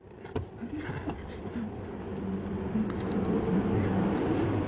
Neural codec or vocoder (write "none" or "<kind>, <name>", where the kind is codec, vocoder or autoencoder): none